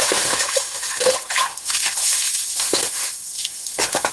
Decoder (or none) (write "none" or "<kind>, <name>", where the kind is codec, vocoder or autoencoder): autoencoder, DAC-VAE